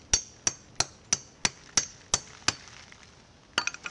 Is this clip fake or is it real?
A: real